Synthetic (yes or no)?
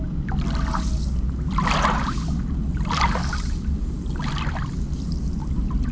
no